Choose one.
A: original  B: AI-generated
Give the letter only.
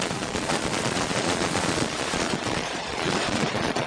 B